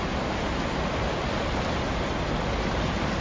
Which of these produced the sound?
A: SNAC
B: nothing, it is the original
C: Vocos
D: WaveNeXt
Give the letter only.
B